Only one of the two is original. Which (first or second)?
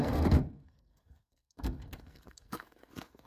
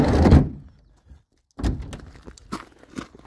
second